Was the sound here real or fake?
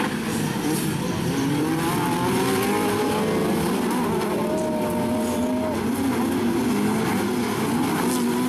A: real